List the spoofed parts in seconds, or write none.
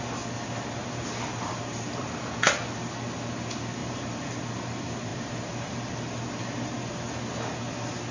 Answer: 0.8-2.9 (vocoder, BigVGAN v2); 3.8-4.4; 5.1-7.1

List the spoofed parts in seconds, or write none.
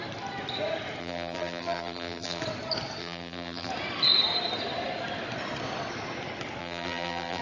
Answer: 1.0-2.4 (vocoder, BigVGAN v2); 3.0-3.7; 6.6-7.4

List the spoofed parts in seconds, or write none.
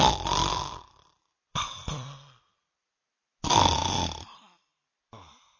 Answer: 0.0-1.8 (vocoder, BigVGAN v2); 2.5-3.8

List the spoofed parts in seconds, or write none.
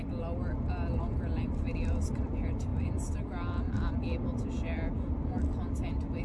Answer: none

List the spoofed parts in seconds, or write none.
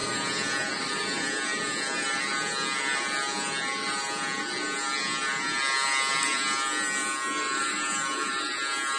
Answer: 0.0-2.2 (vocoder, BigVGAN v2)